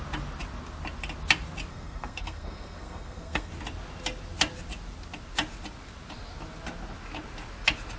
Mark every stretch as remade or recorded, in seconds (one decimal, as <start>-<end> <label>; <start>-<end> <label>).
0.0-1.7 recorded; 1.7-3.5 remade; 3.5-8.0 recorded